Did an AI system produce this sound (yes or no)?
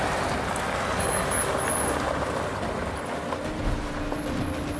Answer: no